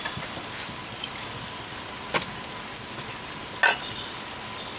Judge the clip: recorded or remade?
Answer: recorded